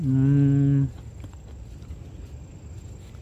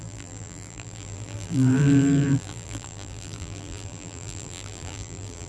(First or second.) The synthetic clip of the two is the second